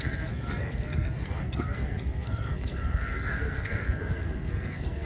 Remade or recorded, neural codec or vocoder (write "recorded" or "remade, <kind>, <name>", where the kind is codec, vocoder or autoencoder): remade, codec, SNAC